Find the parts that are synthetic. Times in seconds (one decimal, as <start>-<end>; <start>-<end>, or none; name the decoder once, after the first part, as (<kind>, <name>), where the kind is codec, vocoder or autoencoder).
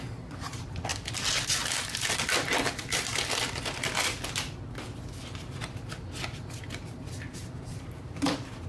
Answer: 7.3-8.7 (vocoder, BigVGAN v2)